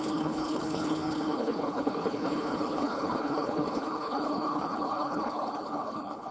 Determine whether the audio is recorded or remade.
remade